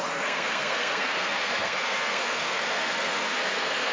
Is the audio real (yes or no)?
no